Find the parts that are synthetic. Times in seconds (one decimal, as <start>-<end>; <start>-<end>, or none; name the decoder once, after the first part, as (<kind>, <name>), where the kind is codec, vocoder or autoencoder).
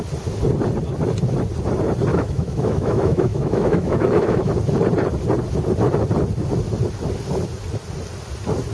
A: 2.1-4.5 (autoencoder, DAC-VAE)